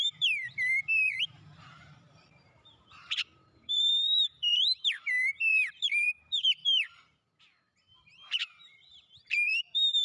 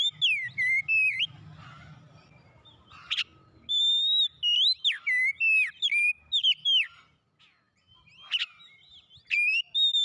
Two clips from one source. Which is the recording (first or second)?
second